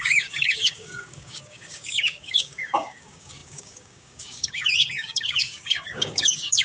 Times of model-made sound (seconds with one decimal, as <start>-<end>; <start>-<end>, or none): 0.0-6.6